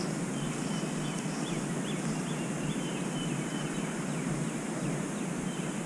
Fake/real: real